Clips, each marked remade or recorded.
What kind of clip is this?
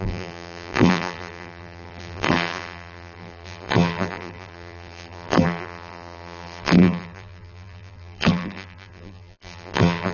remade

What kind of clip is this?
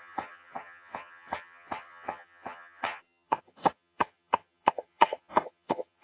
remade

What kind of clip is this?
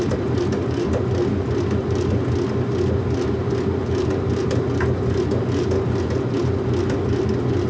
recorded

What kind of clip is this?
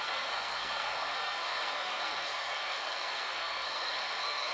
remade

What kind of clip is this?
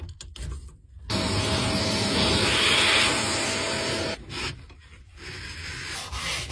recorded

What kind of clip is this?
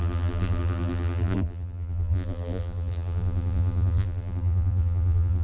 remade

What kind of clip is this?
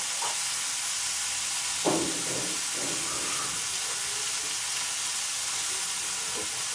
recorded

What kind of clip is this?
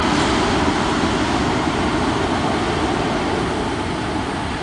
recorded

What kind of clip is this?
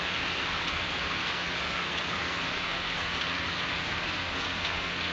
remade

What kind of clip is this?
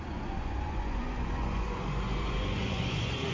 remade